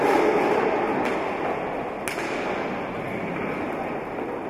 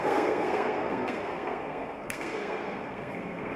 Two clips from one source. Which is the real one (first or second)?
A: first